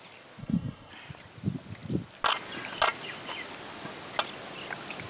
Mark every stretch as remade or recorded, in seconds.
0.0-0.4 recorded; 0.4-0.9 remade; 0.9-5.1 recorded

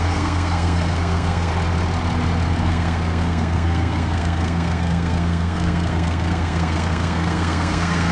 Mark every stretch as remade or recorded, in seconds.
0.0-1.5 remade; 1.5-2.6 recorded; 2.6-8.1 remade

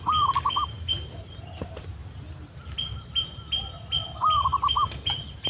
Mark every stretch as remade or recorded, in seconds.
0.0-5.5 recorded